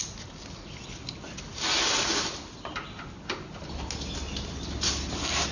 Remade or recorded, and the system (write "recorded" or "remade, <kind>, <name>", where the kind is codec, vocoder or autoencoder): recorded